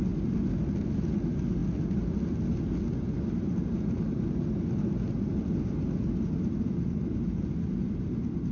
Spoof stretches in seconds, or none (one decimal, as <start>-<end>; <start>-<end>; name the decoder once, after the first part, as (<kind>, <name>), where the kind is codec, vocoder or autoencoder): none